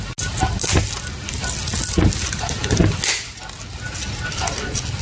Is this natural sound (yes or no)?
yes